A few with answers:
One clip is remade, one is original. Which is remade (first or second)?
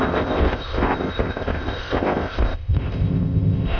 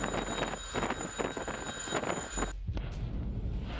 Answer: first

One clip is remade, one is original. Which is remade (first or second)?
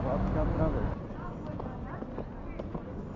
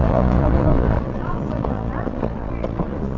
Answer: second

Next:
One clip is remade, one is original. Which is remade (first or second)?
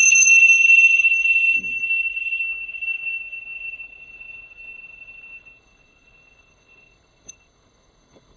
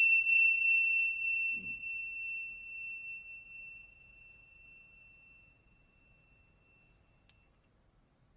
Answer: first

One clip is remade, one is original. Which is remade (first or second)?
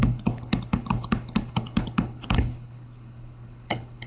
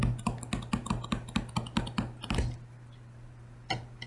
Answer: first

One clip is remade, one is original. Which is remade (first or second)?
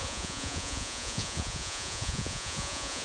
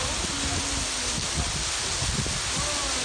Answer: first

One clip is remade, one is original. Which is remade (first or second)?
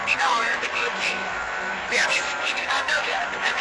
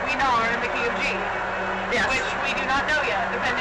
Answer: first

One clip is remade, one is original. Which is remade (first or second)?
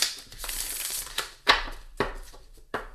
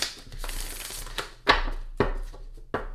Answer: first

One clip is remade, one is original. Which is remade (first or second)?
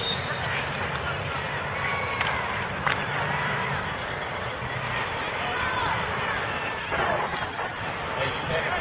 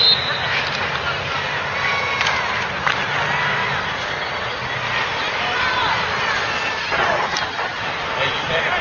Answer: first